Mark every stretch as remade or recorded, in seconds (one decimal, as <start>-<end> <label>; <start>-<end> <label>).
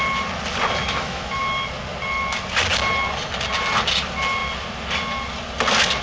0.0-0.8 recorded; 0.8-1.4 remade; 1.4-6.0 recorded